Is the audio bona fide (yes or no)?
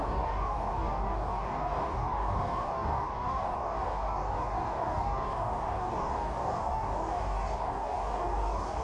no